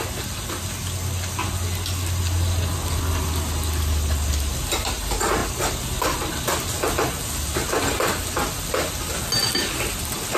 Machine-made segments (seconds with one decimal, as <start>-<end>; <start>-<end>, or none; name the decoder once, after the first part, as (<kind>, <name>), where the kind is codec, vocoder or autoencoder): none